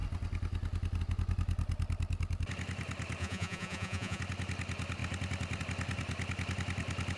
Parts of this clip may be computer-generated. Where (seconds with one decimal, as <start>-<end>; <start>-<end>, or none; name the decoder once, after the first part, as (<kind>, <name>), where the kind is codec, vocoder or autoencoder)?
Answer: 3.2-4.2 (vocoder, Vocos)